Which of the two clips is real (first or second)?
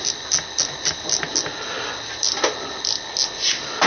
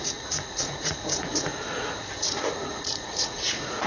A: first